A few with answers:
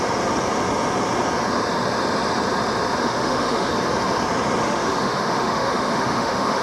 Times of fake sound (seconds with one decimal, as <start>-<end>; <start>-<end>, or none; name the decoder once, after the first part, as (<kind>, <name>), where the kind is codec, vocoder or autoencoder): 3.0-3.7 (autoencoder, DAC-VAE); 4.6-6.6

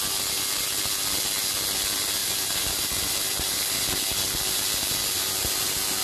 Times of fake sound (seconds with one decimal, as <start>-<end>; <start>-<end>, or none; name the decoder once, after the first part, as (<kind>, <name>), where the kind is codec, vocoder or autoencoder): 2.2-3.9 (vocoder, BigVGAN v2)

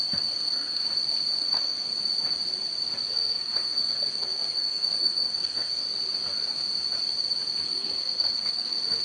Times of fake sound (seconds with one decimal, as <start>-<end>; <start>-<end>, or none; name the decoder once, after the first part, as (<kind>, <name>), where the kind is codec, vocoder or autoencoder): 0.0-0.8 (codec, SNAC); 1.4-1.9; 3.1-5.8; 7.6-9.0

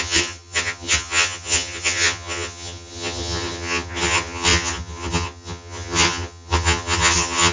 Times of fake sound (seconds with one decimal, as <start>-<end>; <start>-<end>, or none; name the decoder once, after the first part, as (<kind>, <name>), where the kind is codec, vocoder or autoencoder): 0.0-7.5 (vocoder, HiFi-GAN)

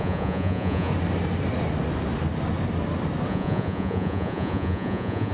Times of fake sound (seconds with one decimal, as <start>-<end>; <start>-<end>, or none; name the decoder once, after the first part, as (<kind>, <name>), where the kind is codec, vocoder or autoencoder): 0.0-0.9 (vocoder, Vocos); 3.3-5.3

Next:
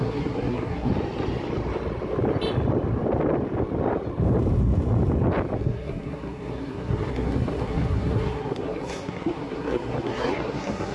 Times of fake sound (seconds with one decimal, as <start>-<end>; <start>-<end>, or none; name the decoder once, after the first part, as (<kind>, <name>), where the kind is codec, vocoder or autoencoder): 0.0-0.9 (codec, SNAC); 5.6-10.9

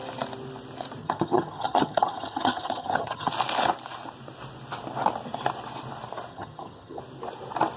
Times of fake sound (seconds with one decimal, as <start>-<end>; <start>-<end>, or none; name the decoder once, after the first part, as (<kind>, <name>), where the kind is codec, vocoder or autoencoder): 1.0-3.3 (vocoder, HiFi-GAN); 6.3-7.0